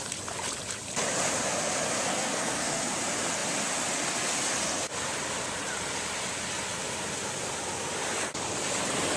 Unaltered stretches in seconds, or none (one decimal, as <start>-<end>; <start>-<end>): 0.0-2.1; 2.8-9.2